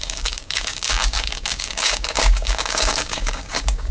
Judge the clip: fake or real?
fake